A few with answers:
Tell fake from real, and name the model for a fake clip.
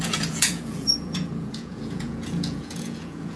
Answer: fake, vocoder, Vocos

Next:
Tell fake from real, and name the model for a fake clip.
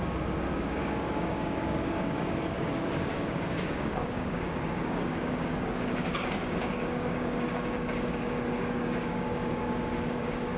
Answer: fake, codec, DAC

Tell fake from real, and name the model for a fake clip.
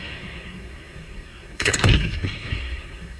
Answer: fake, codec, SNAC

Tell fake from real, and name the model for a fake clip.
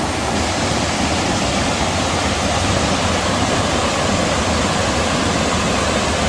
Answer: real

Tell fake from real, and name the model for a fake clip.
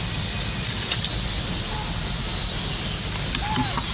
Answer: real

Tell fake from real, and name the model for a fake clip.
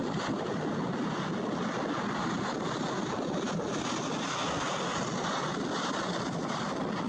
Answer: real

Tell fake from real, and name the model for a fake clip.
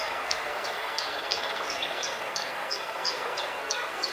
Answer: fake, codec, SNAC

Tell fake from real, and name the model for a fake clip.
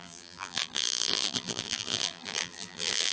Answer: fake, vocoder, BigVGAN v2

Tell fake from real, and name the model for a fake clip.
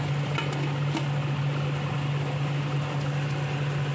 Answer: real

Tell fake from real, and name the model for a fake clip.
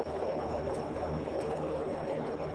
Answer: fake, codec, HILCodec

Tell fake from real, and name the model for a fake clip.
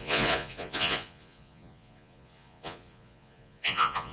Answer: fake, vocoder, Vocos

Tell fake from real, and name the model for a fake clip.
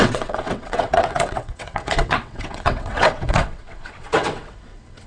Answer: fake, vocoder, WaveNeXt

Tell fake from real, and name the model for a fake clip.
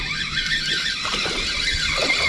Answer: real